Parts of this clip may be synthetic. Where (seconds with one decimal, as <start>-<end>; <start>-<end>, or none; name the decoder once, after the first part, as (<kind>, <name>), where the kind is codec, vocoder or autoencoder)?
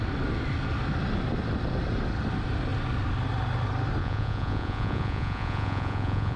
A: 4.0-6.4 (vocoder, Vocos)